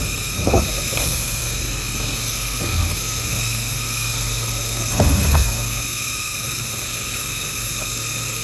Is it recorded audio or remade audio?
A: remade